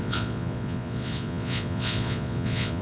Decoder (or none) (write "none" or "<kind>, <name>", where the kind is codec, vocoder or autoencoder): vocoder, Vocos